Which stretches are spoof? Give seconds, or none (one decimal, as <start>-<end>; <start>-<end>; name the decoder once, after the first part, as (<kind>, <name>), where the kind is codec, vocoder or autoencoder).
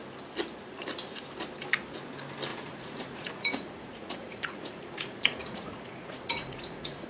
2.5-7.1 (vocoder, Vocos)